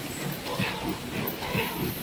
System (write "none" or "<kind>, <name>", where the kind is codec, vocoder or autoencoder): none